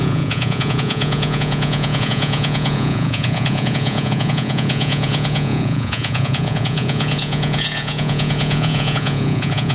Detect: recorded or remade remade